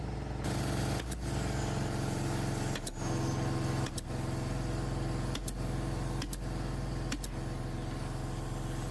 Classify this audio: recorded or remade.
recorded